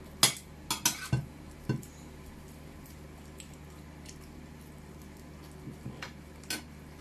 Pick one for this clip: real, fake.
real